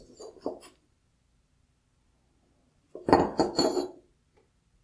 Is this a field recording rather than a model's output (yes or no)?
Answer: yes